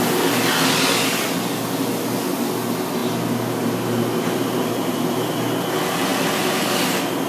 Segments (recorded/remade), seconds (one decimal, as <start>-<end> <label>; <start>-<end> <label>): 0.0-7.3 recorded